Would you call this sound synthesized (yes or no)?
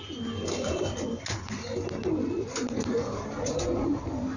no